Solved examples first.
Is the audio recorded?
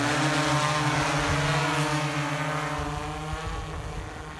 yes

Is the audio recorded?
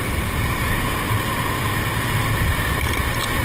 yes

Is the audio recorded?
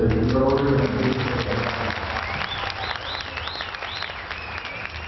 yes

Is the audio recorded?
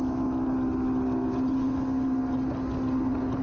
yes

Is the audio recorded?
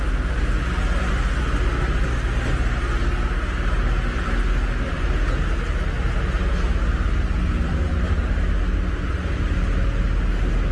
yes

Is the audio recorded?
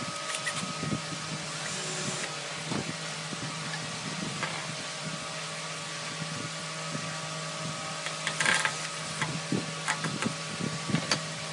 yes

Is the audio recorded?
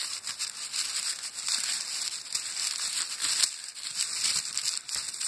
yes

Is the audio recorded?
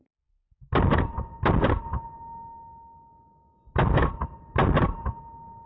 yes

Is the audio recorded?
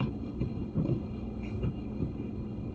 no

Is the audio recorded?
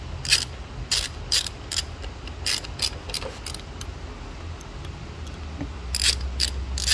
yes